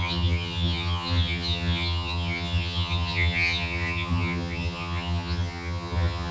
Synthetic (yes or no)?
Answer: yes